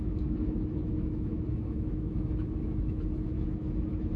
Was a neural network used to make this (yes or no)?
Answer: yes